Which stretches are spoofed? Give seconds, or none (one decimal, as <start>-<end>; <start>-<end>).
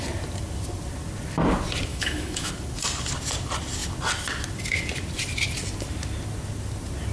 1.9-2.5